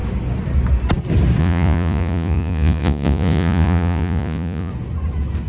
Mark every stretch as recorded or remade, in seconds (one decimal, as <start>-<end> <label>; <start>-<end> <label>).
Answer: 0.0-1.4 recorded; 1.4-4.7 remade; 4.7-5.5 recorded